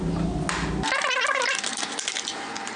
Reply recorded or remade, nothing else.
recorded